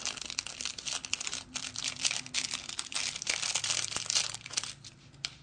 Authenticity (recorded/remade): recorded